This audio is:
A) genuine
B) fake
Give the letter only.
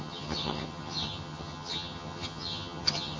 B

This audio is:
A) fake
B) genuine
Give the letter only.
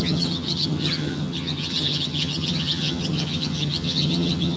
A